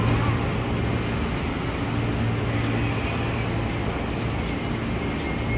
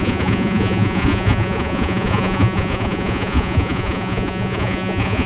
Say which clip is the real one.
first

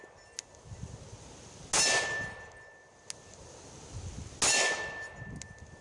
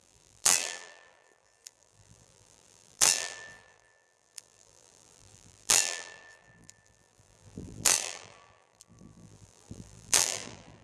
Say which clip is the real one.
first